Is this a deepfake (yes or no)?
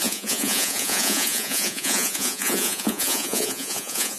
yes